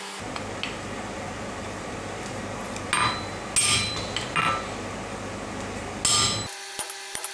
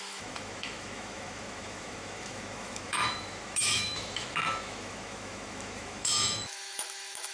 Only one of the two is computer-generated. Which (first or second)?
second